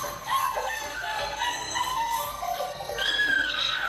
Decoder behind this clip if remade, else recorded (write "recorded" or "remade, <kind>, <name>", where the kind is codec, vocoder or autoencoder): remade, codec, SNAC